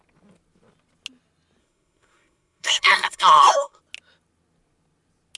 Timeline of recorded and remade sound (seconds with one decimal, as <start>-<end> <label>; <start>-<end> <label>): 0.0-1.6 recorded; 1.6-3.8 remade; 3.8-5.4 recorded